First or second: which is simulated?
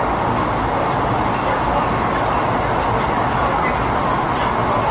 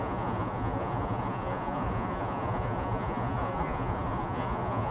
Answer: second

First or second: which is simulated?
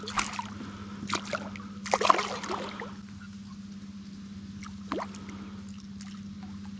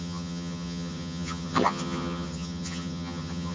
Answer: second